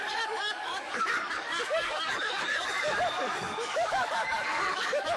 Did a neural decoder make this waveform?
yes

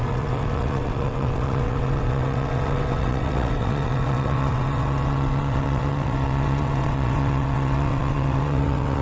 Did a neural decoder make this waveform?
yes